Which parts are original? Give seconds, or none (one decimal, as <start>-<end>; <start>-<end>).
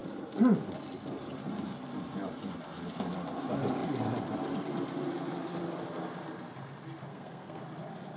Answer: 0.0-7.1; 7.6-8.2